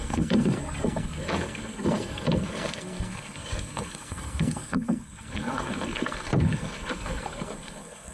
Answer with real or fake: fake